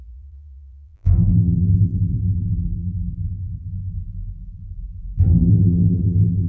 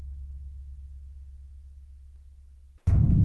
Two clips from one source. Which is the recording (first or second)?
second